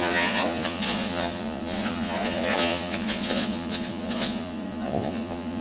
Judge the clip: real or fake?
fake